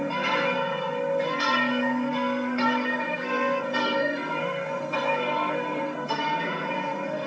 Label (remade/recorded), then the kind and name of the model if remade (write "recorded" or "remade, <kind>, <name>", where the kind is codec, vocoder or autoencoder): remade, codec, SNAC